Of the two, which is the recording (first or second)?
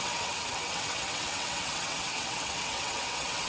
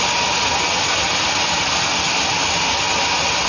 second